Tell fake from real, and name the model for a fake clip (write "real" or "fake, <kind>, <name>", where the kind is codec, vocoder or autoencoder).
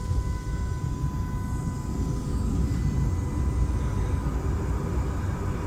real